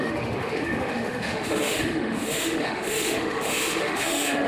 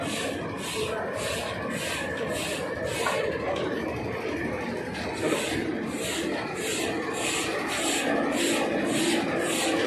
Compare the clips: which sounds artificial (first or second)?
first